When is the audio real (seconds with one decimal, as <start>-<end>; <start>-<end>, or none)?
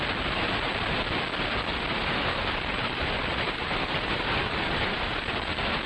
0.0-1.7; 5.2-5.9